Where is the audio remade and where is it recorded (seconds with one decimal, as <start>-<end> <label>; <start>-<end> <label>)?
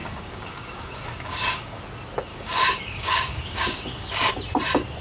0.0-1.8 remade; 1.8-2.3 recorded; 2.3-4.3 remade; 4.3-5.0 recorded